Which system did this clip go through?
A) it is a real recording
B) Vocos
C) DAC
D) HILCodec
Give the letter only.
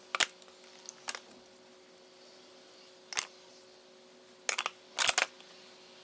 A